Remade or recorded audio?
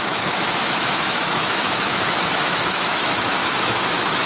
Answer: remade